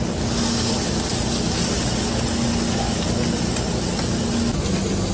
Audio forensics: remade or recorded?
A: recorded